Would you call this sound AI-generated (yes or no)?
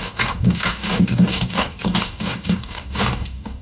yes